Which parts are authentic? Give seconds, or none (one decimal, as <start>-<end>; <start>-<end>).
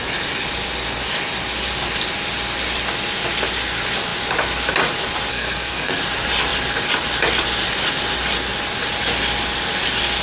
0.0-5.3; 6.0-10.2